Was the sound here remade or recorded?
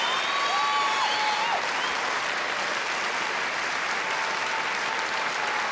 recorded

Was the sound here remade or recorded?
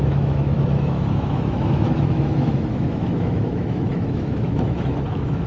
remade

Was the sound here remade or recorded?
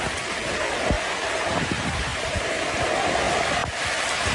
recorded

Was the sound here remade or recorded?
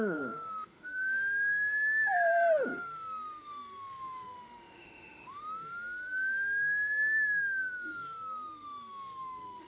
remade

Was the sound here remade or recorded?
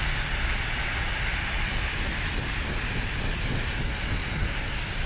recorded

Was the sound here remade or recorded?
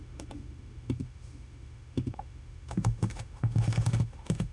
remade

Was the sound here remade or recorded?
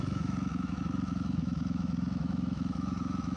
remade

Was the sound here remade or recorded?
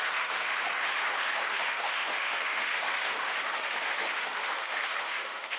remade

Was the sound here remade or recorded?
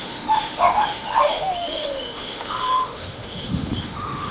remade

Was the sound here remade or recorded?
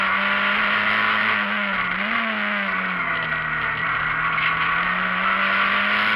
recorded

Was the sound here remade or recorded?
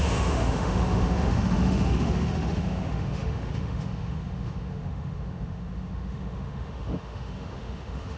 remade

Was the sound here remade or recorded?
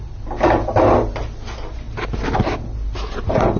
recorded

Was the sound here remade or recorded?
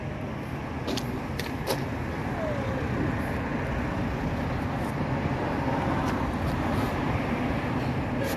recorded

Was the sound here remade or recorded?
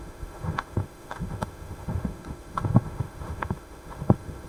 remade